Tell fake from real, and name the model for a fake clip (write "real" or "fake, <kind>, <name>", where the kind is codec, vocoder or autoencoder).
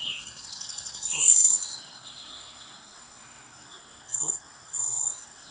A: fake, codec, SNAC